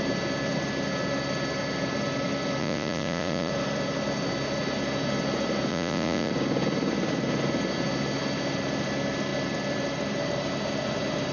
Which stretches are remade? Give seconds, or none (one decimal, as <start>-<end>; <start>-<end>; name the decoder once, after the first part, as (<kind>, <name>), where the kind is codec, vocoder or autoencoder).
2.6-3.5 (vocoder, Vocos); 5.7-6.3